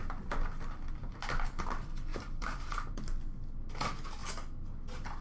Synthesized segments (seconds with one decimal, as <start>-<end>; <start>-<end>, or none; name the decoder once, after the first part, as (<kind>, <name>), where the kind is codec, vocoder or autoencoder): 2.1-3.0 (vocoder, BigVGAN v2)